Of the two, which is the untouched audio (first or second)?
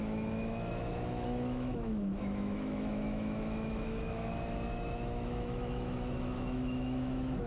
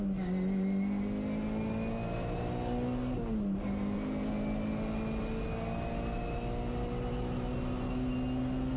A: second